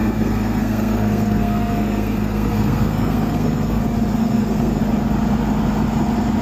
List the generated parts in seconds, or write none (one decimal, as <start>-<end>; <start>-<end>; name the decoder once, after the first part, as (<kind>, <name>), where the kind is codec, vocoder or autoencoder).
0.0-3.8 (codec, SNAC); 4.2-4.8